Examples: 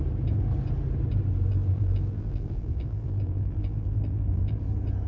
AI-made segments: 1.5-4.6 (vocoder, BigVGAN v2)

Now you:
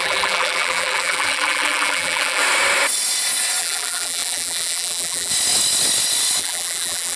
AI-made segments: 0.0-2.4 (vocoder, BigVGAN v2); 3.6-5.3; 6.4-7.2

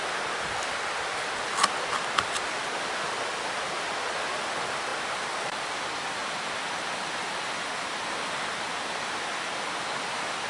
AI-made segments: 4.9-5.6 (vocoder, BigVGAN v2)

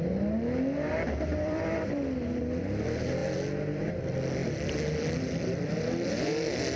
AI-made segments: 1.3-1.9 (vocoder, BigVGAN v2); 4.4-6.1

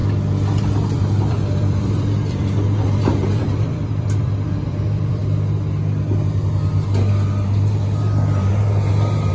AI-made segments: 0.6-5.2 (vocoder, BigVGAN v2)

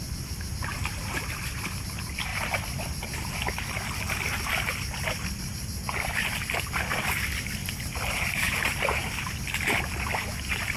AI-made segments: 0.7-1.4 (vocoder, BigVGAN v2); 7.6-9.1

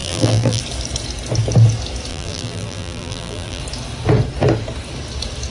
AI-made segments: 0.0-0.6 (vocoder, BigVGAN v2); 2.1-3.6

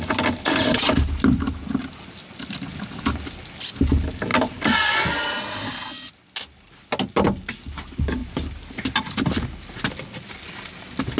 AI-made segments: 8.2-9.9 (vocoder, BigVGAN v2)